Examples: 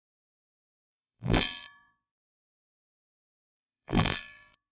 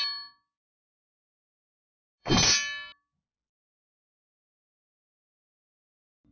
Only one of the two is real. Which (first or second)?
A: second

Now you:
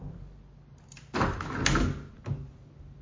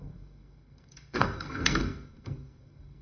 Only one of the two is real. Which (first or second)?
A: first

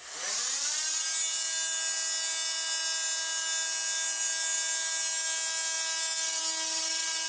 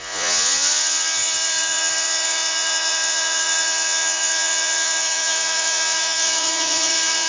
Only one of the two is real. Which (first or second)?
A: first